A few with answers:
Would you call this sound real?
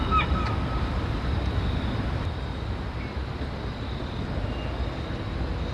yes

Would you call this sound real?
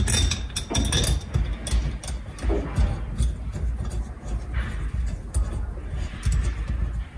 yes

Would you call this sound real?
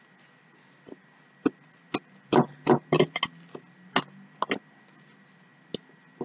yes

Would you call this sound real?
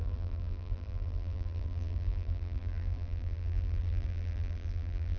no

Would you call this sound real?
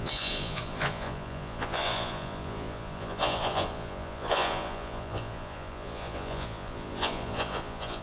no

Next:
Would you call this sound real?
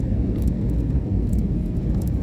no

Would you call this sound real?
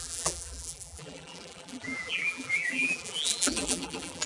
no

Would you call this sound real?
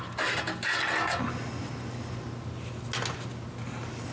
yes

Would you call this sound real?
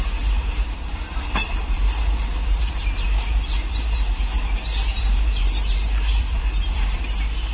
no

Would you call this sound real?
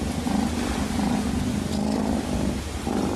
yes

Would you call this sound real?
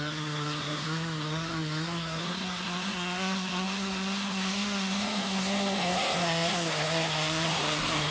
no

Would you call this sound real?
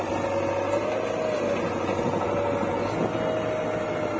yes